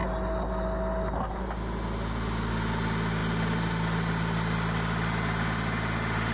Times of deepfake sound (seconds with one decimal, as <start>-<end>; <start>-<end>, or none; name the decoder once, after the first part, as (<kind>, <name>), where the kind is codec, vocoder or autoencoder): none